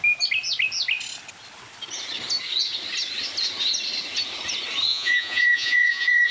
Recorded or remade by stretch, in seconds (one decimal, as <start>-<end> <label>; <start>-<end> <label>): 0.0-4.9 recorded; 4.9-6.3 remade